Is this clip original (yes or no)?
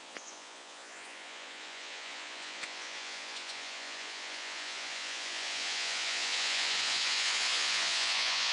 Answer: no